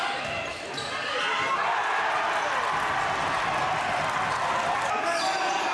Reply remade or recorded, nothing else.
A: recorded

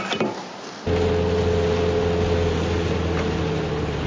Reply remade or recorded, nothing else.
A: recorded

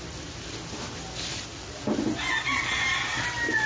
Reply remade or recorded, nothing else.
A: recorded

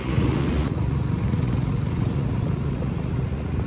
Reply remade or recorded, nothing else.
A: remade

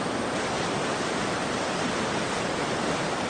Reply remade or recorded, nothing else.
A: recorded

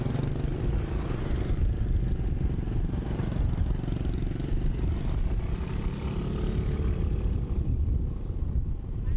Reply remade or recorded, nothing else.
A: recorded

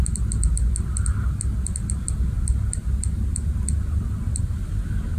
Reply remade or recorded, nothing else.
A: recorded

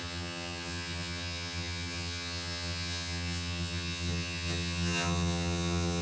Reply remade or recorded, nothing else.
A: remade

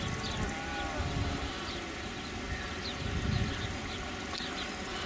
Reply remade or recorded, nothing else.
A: recorded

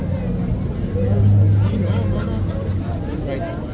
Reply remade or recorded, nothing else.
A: recorded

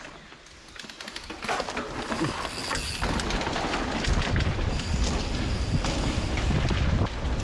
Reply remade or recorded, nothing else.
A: recorded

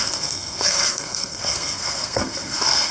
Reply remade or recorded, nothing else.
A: remade